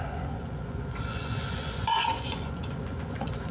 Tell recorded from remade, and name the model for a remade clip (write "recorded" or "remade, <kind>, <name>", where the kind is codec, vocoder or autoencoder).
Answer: remade, vocoder, Vocos